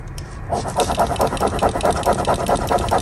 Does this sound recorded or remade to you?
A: recorded